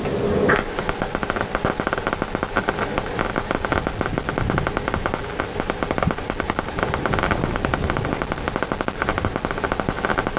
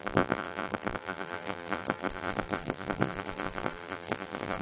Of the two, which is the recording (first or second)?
first